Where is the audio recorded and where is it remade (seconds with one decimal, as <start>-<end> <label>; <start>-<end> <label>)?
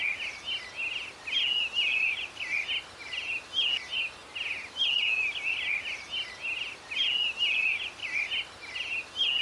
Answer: 0.0-9.4 recorded